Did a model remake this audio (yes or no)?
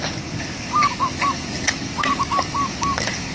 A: yes